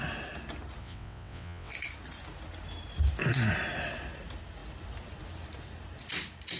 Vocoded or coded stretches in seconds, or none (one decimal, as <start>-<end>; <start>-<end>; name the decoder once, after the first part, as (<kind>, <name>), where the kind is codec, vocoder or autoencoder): 0.8-1.7 (vocoder, WaveNeXt)